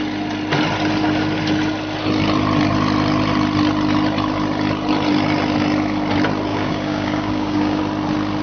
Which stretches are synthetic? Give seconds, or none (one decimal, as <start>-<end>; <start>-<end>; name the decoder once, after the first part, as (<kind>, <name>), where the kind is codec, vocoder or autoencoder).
6.5-7.8 (codec, DAC)